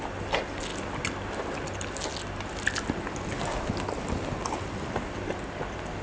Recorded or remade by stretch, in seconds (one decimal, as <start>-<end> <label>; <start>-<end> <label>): 0.0-6.0 recorded